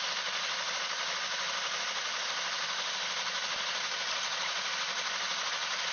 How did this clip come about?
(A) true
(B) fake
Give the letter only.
A